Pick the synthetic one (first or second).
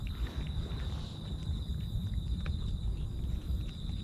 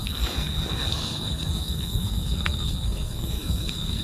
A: second